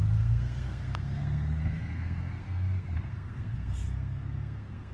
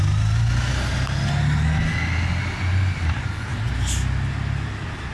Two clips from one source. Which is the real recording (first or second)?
second